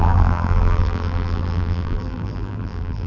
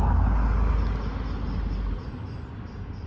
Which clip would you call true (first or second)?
second